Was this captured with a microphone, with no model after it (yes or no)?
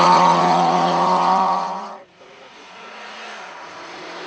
no